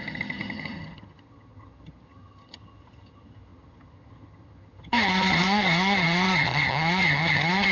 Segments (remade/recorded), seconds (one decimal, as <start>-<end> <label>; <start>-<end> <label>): 0.0-7.7 remade